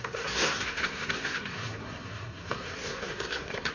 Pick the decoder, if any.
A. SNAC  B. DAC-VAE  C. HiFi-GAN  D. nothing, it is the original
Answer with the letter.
A